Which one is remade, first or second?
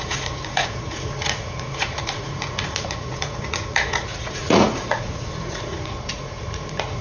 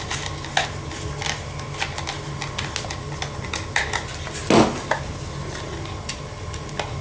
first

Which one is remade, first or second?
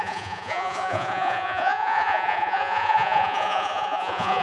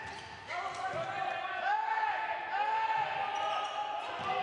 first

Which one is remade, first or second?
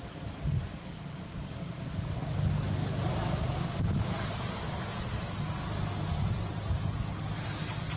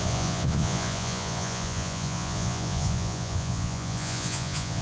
second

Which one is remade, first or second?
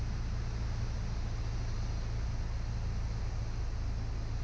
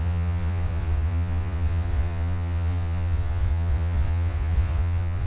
second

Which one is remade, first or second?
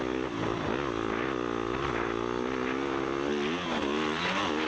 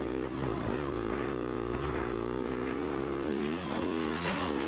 second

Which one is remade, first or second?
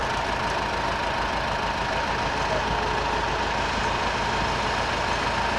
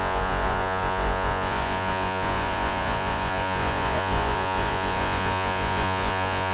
second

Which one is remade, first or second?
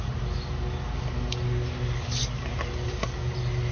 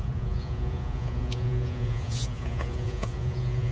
second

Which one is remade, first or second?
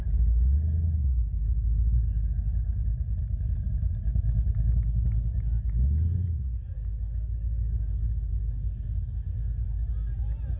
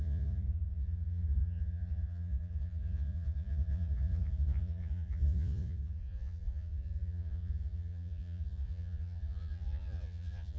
second